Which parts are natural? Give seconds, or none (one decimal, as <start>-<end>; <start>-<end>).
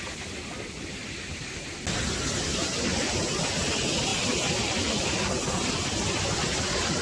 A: 0.0-1.0; 1.6-2.5; 3.1-7.0